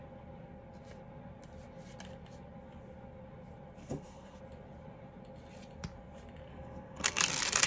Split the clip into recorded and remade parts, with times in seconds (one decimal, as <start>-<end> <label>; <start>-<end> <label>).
0.0-3.8 recorded; 3.8-4.4 remade; 4.4-6.5 recorded; 6.5-7.2 remade; 7.2-7.7 recorded

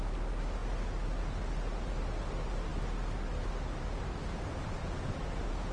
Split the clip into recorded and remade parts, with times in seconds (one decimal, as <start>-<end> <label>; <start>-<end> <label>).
0.0-5.7 recorded

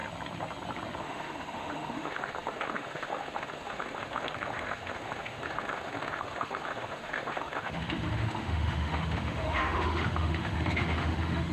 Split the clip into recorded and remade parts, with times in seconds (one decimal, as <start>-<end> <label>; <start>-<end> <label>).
0.0-1.0 recorded; 1.0-11.5 remade

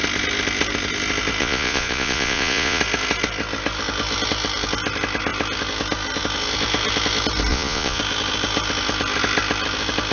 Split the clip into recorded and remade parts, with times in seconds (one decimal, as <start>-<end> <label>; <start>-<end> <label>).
0.0-1.4 recorded; 1.4-2.8 remade; 2.8-7.5 recorded; 7.5-8.0 remade; 8.0-10.1 recorded

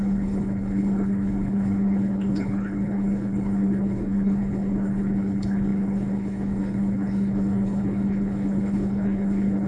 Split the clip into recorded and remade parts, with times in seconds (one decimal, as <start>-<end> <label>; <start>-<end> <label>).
0.0-9.7 remade

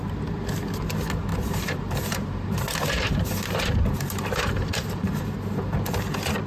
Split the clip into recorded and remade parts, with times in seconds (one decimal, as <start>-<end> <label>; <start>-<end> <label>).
0.0-1.3 recorded; 1.3-5.2 remade; 5.2-6.5 recorded